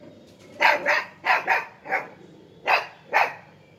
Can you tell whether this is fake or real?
real